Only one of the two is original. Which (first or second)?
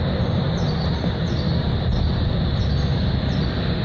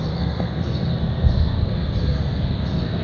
first